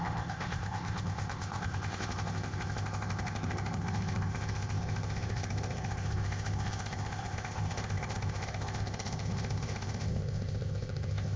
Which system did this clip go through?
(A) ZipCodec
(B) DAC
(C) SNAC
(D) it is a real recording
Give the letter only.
A